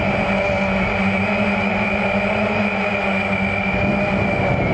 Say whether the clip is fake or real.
real